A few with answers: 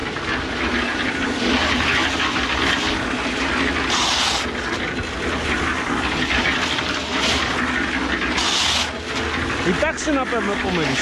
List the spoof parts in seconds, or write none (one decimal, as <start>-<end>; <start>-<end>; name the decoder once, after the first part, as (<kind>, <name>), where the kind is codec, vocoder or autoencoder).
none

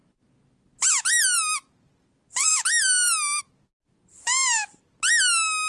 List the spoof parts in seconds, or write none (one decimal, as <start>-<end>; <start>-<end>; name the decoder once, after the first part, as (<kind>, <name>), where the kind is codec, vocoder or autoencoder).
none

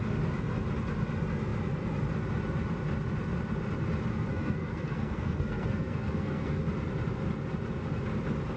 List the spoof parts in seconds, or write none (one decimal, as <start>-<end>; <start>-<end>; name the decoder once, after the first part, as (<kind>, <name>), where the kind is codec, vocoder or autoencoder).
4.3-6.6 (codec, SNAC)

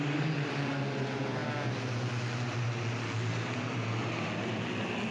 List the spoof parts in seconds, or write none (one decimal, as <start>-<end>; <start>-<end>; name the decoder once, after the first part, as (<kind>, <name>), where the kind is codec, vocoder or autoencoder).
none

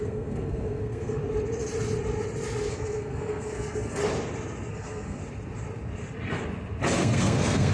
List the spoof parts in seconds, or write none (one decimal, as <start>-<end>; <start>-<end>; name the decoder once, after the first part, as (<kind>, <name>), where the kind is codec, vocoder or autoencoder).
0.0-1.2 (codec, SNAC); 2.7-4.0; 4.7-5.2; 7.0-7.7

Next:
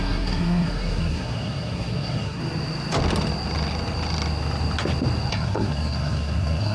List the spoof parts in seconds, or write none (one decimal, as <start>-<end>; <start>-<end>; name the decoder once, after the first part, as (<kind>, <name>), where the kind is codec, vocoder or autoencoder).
0.0-2.4 (codec, SNAC); 5.3-6.7